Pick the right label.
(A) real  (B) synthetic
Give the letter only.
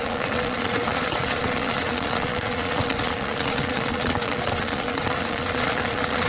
B